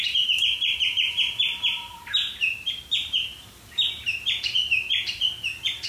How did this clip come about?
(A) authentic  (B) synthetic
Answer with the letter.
B